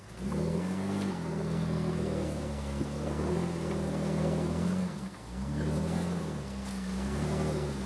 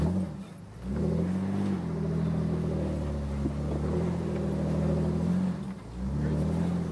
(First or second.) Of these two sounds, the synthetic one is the first